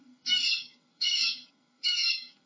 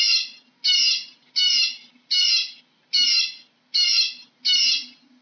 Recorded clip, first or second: second